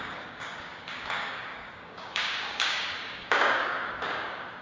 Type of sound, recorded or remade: remade